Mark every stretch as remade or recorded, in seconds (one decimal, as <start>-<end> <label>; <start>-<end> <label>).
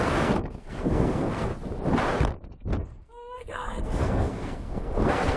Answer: 0.0-1.5 remade; 1.5-2.8 recorded; 2.8-5.4 remade